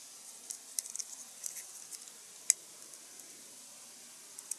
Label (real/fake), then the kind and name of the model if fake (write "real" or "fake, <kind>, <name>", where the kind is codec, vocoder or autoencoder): real